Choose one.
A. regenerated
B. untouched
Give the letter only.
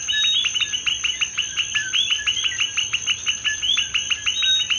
B